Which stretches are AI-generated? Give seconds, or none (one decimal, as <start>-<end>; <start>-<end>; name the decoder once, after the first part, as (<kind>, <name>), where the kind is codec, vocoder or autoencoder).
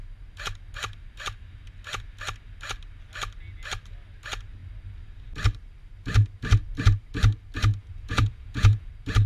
7.8-8.9 (vocoder, Vocos)